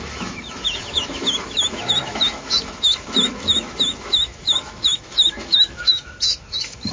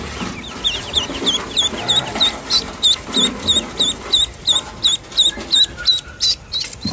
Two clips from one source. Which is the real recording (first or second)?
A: second